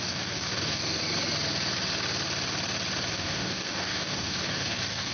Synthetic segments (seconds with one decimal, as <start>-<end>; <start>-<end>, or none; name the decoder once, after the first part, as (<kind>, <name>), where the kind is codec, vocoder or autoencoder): 0.0-1.0 (codec, DAC); 3.1-5.1